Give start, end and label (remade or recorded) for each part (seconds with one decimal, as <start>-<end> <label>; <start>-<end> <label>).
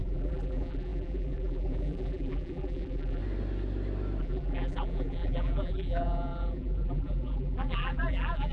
0.0-3.2 remade; 3.2-4.2 recorded; 4.2-8.5 remade